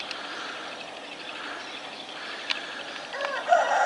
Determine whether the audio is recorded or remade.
recorded